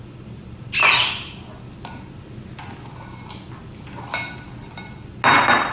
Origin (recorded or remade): recorded